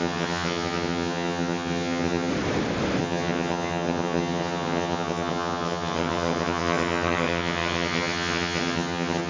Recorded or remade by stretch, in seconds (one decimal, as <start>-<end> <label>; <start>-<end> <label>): 0.0-2.3 remade; 2.3-3.0 recorded; 3.0-9.3 remade